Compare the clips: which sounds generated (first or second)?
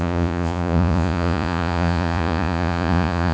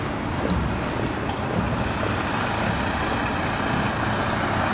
first